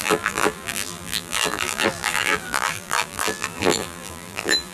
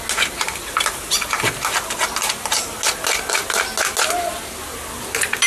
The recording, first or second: second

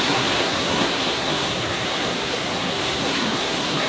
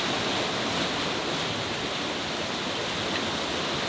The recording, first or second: second